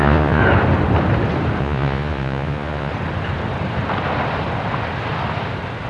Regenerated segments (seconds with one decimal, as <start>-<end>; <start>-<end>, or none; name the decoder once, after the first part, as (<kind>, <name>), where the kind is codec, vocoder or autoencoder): 0.0-0.4 (vocoder, Vocos); 1.6-2.9